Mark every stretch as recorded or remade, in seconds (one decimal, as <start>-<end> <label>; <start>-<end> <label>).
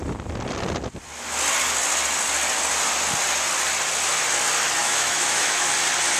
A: 0.0-4.8 recorded; 4.8-5.7 remade; 5.7-6.2 recorded